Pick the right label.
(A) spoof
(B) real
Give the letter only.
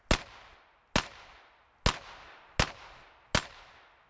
B